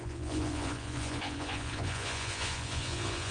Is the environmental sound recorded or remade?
remade